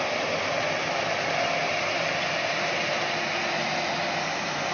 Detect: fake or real real